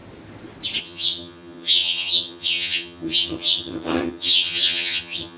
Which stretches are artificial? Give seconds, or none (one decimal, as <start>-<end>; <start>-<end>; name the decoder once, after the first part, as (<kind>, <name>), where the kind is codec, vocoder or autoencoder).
0.8-5.4 (vocoder, HiFi-GAN)